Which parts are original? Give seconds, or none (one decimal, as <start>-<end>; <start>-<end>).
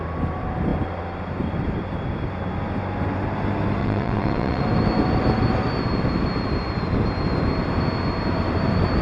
0.0-3.8; 4.6-9.0